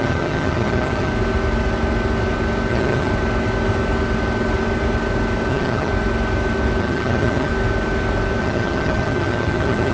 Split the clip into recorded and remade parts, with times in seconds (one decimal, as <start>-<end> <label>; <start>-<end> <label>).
0.0-1.1 remade; 1.1-2.7 recorded; 2.7-3.1 remade; 3.1-5.5 recorded; 5.5-5.9 remade; 5.9-6.8 recorded; 6.8-7.5 remade; 7.5-8.4 recorded; 8.4-9.9 remade